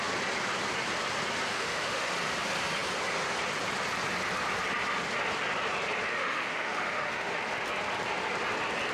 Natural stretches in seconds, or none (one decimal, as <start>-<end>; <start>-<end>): 0.0-1.5; 2.1-6.1; 7.4-8.9